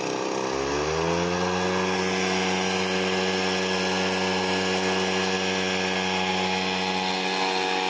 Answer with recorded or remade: recorded